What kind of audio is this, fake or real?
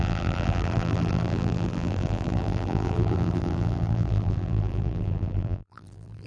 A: fake